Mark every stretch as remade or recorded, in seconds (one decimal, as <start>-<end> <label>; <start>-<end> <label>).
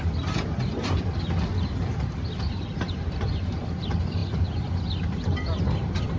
0.0-4.2 remade; 4.2-4.9 recorded; 4.9-6.2 remade